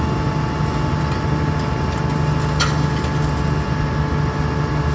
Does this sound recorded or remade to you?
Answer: recorded